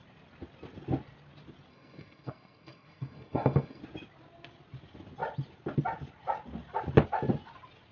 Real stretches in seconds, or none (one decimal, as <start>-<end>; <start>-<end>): 0.0-1.7; 3.8-7.9